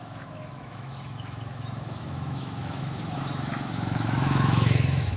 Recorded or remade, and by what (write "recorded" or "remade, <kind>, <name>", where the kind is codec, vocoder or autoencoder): remade, autoencoder, DAC-VAE